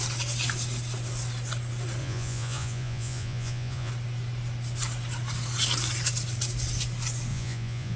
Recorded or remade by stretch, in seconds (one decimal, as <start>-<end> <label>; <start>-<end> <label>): 0.0-2.0 recorded; 2.0-3.9 remade; 3.9-7.3 recorded; 7.3-8.0 remade